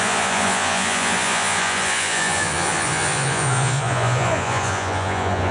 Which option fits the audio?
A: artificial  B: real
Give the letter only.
A